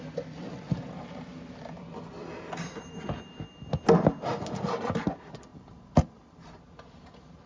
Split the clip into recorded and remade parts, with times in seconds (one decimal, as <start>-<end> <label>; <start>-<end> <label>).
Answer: 0.0-5.5 recorded; 5.5-6.6 remade; 6.6-7.5 recorded

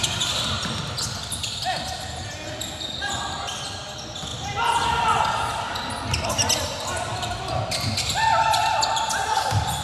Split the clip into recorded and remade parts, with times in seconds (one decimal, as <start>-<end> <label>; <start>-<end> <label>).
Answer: 0.0-9.8 recorded